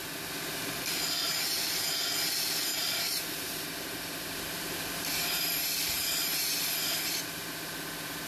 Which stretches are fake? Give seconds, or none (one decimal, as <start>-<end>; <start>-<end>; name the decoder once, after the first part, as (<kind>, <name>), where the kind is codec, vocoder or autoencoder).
1.3-1.9 (vocoder, BigVGAN v2); 2.7-7.5